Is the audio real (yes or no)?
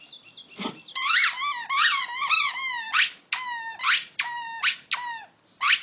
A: yes